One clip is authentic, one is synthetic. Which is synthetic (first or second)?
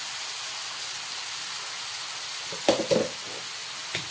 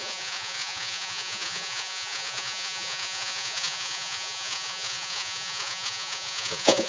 second